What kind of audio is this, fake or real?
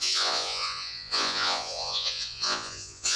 fake